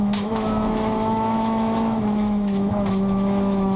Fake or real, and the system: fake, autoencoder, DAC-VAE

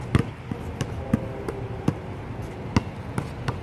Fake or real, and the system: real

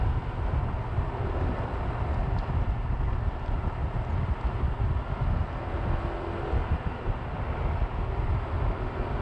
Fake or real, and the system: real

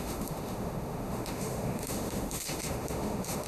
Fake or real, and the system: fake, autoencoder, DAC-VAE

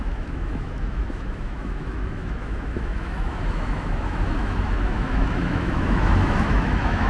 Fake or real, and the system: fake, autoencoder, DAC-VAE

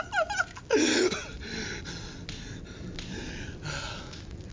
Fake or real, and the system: real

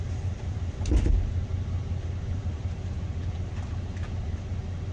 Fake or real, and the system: real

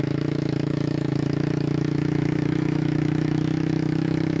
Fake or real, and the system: fake, autoencoder, DAC-VAE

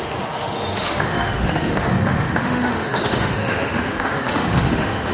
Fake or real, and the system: fake, autoencoder, DAC-VAE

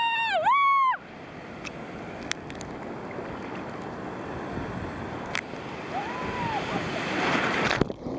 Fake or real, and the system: real